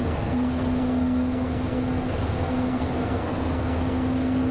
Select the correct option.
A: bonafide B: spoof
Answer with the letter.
B